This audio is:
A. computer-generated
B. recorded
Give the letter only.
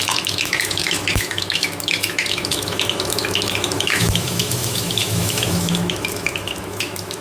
A